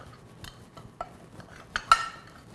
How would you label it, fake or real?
real